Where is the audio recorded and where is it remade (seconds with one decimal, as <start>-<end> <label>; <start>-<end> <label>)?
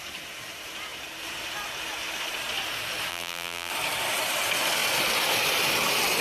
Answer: 0.0-3.1 recorded; 3.1-3.7 remade; 3.7-6.2 recorded